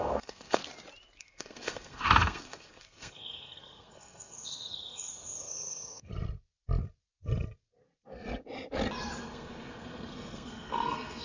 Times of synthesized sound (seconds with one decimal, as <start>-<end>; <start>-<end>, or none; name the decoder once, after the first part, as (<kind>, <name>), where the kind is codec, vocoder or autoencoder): 0.0-0.6 (codec, SNAC); 1.2-6.1; 9.2-11.2